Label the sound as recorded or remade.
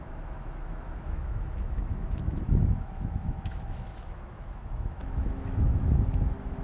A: remade